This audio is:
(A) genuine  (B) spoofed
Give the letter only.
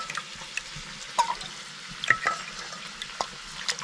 A